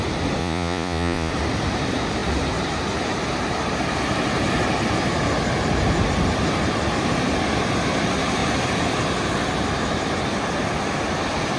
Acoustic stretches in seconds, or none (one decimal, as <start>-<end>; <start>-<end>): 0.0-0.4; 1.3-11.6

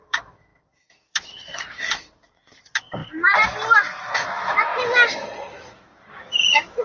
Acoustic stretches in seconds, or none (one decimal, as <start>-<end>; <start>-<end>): 3.0-4.0; 4.7-5.5

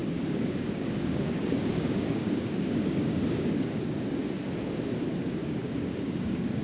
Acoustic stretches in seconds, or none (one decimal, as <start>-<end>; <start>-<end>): 4.2-5.1

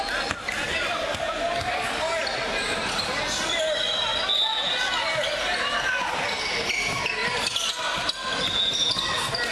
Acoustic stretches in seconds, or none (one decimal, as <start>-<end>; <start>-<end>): 0.0-9.5

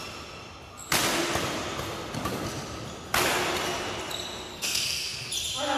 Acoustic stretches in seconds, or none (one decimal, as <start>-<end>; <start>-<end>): 0.0-4.5; 5.3-5.8

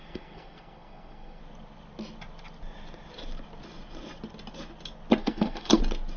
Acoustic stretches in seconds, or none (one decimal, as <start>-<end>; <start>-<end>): 1.4-5.2; 5.8-6.2